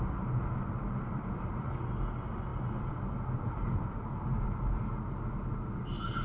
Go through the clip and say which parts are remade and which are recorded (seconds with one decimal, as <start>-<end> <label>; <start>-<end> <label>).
0.0-6.2 recorded

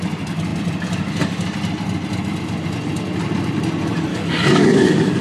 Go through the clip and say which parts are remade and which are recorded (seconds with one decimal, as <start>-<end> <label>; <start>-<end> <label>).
0.0-4.1 recorded; 4.1-5.2 remade

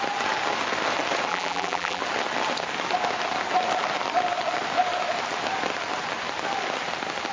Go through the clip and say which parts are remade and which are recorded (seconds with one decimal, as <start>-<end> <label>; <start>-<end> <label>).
0.0-1.3 recorded; 1.3-2.0 remade; 2.0-7.3 recorded

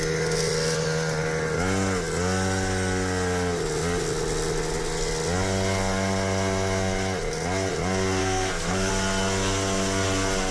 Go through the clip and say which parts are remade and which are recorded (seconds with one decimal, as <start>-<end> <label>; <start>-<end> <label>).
0.0-8.2 recorded; 8.2-8.9 remade; 8.9-10.5 recorded

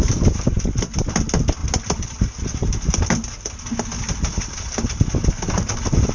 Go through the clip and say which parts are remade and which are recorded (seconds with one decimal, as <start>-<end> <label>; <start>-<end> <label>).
0.0-6.1 recorded

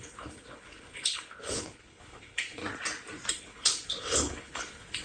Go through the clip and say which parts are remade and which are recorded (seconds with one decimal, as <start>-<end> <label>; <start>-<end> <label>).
0.0-2.6 remade; 2.6-3.3 recorded; 3.3-5.0 remade

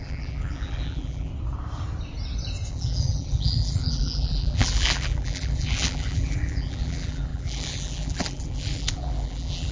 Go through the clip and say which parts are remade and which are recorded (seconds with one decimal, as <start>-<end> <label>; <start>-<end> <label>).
0.0-1.3 remade; 1.3-2.7 recorded; 2.7-9.7 remade

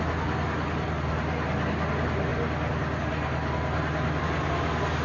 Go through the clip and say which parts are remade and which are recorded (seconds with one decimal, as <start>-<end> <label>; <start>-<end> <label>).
0.0-5.0 recorded